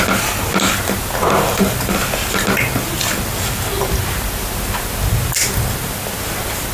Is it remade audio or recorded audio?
recorded